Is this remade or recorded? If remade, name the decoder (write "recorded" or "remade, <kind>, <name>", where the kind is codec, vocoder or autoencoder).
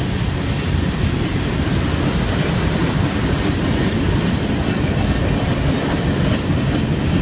recorded